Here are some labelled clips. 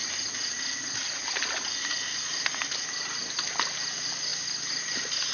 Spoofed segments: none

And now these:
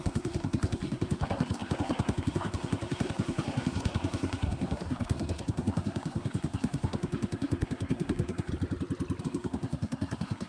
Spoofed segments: 0.0-8.5 (codec, SNAC); 9.2-10.5

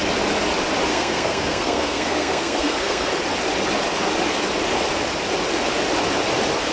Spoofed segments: 0.9-3.1 (codec, SNAC)

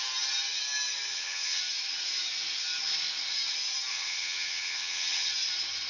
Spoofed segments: 1.1-1.6 (vocoder, HiFi-GAN); 3.9-5.3